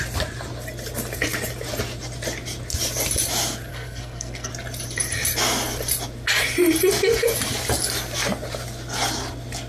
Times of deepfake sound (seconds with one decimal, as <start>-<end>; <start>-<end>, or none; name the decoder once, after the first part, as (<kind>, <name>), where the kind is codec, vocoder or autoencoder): 3.7-4.5 (codec, SNAC)